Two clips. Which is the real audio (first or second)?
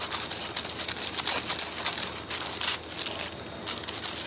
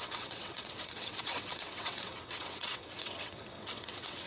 first